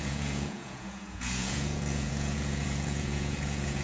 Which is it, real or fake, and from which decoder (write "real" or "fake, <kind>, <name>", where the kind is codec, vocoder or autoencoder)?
fake, vocoder, Vocos